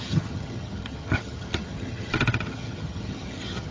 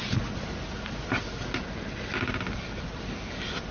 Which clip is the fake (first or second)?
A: first